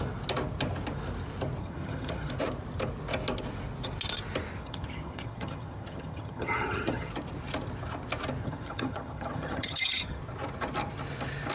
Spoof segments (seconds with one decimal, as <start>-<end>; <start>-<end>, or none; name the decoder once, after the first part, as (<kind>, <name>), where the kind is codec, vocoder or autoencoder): 1.6-2.3 (vocoder, HiFi-GAN); 4.6-7.1; 8.4-10.2